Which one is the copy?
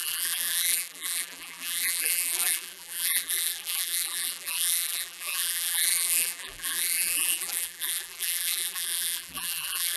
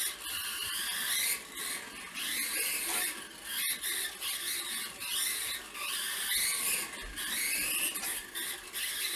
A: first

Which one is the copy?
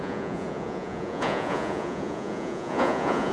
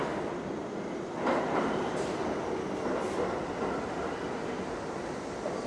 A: first